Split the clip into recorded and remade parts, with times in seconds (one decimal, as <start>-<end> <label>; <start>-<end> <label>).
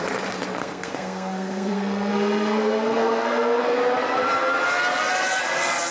0.0-0.6 recorded; 0.6-3.8 remade; 3.8-5.9 recorded